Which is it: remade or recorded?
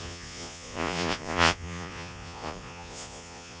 remade